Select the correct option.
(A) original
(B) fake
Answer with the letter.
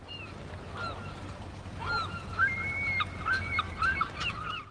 B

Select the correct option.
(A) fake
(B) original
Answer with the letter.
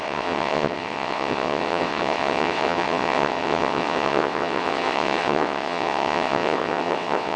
A